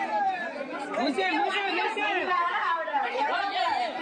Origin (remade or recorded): remade